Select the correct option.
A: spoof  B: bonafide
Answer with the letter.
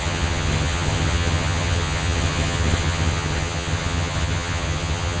A